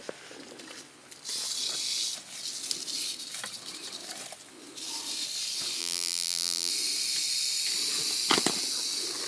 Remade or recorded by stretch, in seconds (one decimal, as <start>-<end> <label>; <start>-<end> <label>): 0.0-5.8 recorded; 5.8-6.7 remade; 6.7-9.3 recorded